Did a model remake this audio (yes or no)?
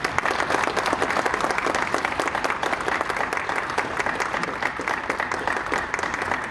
no